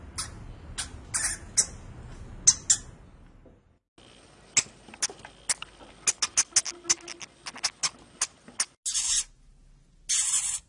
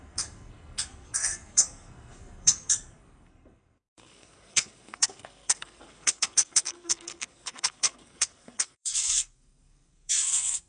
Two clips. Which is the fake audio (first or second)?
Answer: second